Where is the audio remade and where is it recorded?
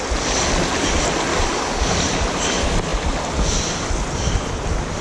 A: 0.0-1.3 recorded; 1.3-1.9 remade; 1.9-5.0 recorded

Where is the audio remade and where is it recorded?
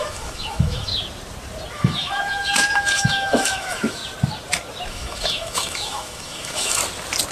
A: 0.0-0.9 remade; 0.9-1.7 recorded; 1.7-4.0 remade; 4.0-4.9 recorded; 4.9-6.8 remade; 6.8-7.3 recorded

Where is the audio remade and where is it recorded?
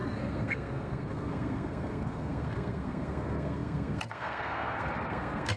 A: 0.0-5.6 remade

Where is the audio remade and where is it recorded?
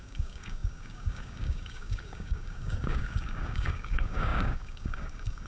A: 0.0-5.5 remade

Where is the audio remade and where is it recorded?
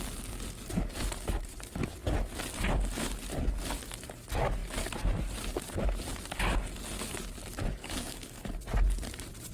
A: 0.0-7.8 recorded; 7.8-8.4 remade; 8.4-9.5 recorded